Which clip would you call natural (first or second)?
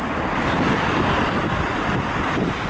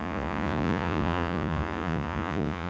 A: first